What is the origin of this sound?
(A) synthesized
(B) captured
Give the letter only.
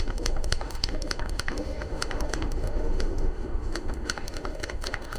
A